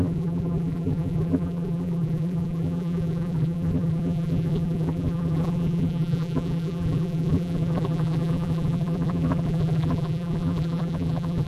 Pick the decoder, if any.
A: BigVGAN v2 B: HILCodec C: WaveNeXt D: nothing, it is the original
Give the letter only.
A